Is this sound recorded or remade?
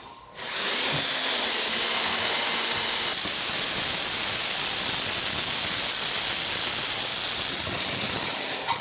recorded